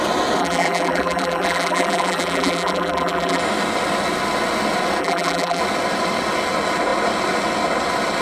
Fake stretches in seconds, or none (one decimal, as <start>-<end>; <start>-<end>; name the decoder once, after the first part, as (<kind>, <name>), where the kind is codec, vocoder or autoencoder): 0.4-3.4 (vocoder, BigVGAN v2); 5.0-5.6